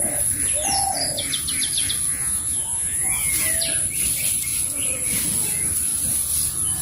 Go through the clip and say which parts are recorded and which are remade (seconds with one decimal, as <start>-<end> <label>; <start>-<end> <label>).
0.0-2.1 recorded; 2.1-3.3 remade; 3.3-6.8 recorded